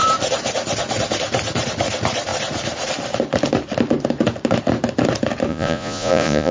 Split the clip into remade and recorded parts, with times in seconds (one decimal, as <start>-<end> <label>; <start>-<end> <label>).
0.0-5.5 recorded; 5.5-6.5 remade